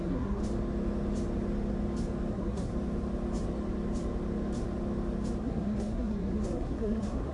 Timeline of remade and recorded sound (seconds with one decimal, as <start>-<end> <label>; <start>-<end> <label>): 0.0-0.4 remade; 0.4-2.3 recorded; 2.3-2.7 remade; 2.7-5.4 recorded; 5.4-7.3 remade